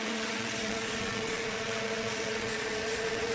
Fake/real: fake